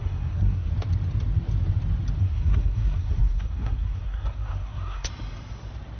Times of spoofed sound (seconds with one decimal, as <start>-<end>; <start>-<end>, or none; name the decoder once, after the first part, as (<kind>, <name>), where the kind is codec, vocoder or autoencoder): 0.0-0.7 (codec, SNAC); 2.2-5.1